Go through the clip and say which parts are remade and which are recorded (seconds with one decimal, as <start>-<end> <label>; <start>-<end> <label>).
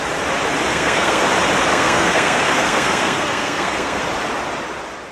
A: 0.0-0.7 recorded; 0.7-1.2 remade; 1.2-1.7 recorded; 1.7-4.0 remade; 4.0-5.1 recorded